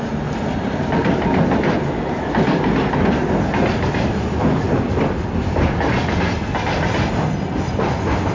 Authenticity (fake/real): real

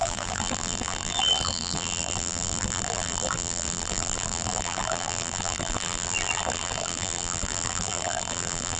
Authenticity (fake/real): fake